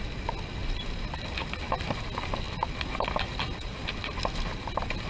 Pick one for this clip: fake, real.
real